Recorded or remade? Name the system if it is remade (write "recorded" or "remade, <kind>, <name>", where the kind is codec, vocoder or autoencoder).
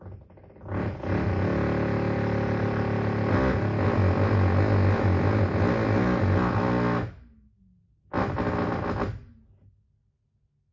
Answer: recorded